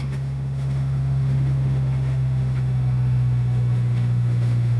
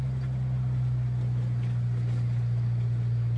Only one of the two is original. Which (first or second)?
second